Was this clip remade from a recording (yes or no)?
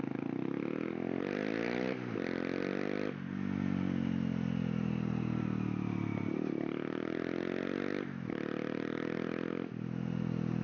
no